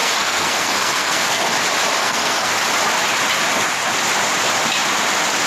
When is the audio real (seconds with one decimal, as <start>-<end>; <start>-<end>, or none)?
1.5-2.0; 2.5-5.5